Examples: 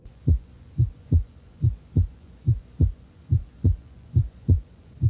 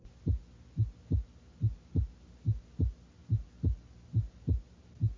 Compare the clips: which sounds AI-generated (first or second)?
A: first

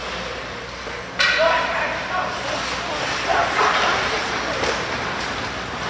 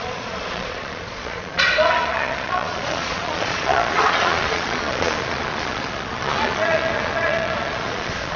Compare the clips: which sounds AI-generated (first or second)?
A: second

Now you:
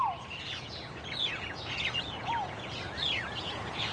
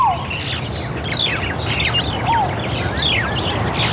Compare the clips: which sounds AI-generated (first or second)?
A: first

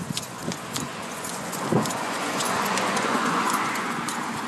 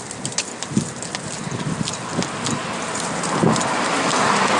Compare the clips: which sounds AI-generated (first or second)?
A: first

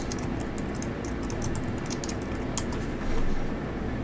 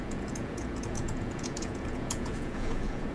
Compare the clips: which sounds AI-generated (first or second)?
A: second